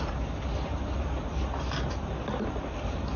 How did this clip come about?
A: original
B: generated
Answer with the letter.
A